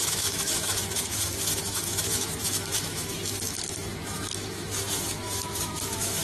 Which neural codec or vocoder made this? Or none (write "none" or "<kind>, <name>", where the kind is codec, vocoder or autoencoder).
autoencoder, DAC-VAE